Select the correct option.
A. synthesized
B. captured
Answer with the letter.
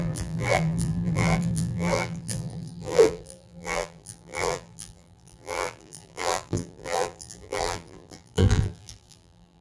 A